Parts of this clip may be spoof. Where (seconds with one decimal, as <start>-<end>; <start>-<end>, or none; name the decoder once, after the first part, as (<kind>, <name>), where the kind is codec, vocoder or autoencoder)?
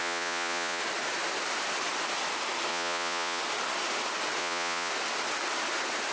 0.0-0.8 (vocoder, Vocos); 2.7-3.4; 4.4-4.9